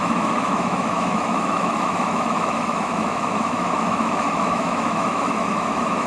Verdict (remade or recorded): remade